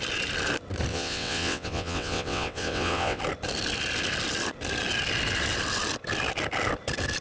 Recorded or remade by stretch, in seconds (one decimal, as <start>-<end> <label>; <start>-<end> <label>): 0.0-0.9 recorded; 0.9-3.2 remade; 3.2-7.2 recorded